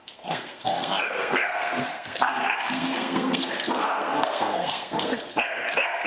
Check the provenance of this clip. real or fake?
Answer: fake